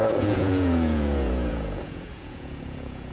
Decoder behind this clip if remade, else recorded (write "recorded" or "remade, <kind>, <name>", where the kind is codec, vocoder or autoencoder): remade, vocoder, Vocos